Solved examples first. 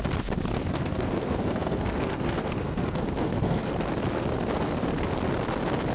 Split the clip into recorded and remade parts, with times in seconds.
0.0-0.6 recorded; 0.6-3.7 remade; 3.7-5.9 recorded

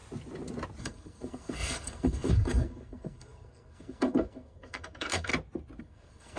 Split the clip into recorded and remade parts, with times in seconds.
0.0-0.8 recorded; 0.8-5.3 remade; 5.3-5.8 recorded; 5.8-6.4 remade

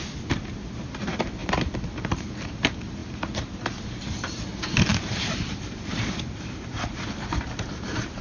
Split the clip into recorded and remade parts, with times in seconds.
0.0-1.4 remade; 1.4-2.0 recorded; 2.0-8.2 remade

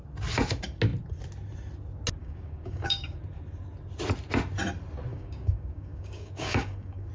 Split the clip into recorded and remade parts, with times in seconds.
0.0-2.2 recorded; 2.2-3.2 remade; 3.2-5.1 recorded; 5.1-7.1 remade

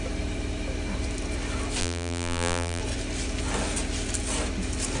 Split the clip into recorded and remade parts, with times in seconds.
0.0-1.8 recorded; 1.8-2.8 remade; 2.8-5.0 recorded

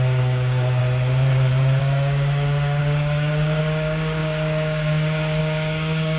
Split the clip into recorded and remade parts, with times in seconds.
0.0-0.8 remade; 0.8-1.8 recorded; 1.8-6.2 remade

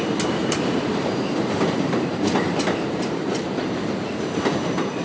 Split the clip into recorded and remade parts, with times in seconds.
0.0-0.4 recorded; 0.4-3.4 remade; 3.4-5.0 recorded